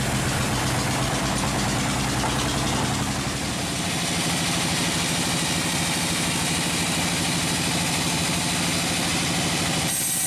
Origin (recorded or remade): recorded